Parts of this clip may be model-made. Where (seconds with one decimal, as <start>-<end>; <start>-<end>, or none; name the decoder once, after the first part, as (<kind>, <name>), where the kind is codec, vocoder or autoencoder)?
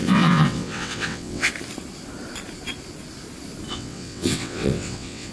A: 0.0-1.5 (vocoder, WaveNeXt); 3.7-5.3